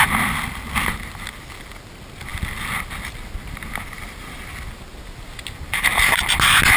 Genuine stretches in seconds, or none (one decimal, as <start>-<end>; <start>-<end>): 0.0-6.8